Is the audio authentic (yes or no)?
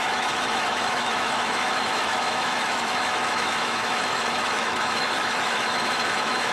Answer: no